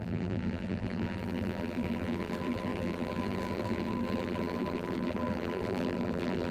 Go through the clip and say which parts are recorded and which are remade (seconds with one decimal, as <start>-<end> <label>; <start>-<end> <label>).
0.0-6.5 remade